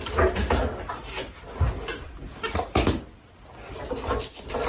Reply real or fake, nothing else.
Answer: real